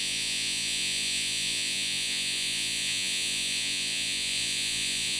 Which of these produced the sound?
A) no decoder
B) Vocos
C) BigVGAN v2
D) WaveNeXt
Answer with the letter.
B